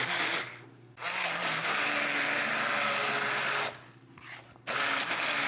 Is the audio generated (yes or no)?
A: no